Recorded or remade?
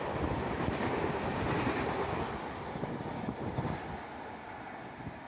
recorded